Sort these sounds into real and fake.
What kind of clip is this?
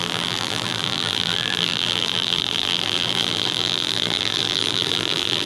fake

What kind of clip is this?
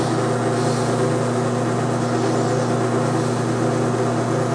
real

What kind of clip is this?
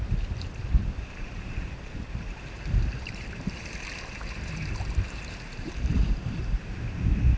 fake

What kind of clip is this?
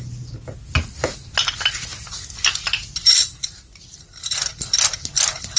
real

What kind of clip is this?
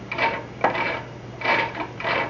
real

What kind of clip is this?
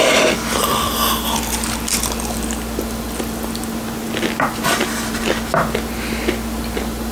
real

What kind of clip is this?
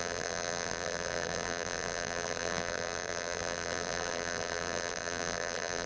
fake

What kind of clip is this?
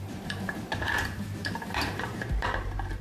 fake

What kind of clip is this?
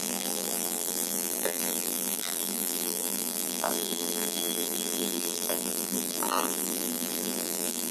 fake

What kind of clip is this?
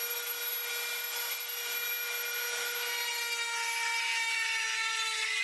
real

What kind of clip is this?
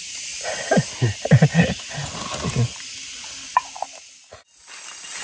real